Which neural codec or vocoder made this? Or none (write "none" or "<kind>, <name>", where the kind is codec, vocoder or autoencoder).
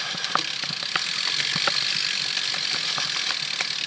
none